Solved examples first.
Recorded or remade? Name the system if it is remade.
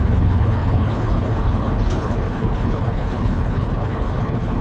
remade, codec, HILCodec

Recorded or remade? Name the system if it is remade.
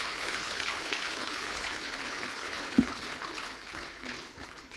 remade, codec, HILCodec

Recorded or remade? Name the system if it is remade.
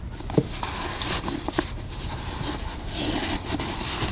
recorded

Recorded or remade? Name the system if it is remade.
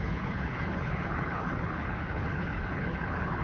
remade, codec, HILCodec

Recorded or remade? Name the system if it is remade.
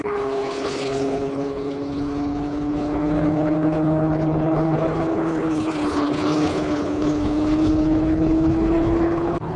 remade, codec, HILCodec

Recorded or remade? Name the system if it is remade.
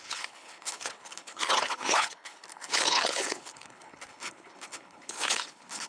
remade, codec, HILCodec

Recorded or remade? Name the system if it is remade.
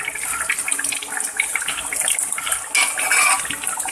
recorded